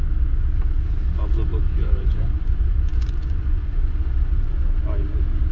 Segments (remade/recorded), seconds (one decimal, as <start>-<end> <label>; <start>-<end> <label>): 0.0-1.5 recorded; 1.5-4.8 remade; 4.8-5.5 recorded